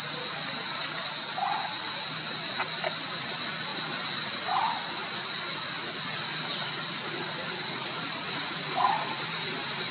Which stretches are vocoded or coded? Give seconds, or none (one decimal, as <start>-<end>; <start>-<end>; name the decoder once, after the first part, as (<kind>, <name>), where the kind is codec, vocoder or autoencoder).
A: 5.5-9.1 (vocoder, Vocos)